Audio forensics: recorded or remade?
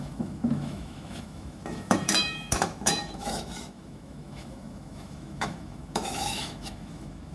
remade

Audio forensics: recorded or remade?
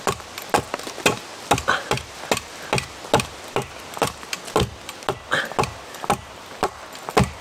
recorded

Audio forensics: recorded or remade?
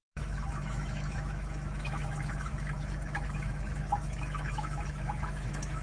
remade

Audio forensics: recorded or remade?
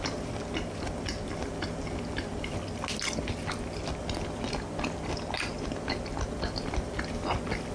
recorded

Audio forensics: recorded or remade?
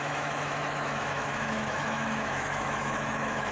remade